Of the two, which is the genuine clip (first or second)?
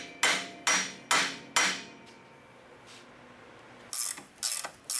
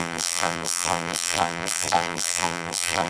first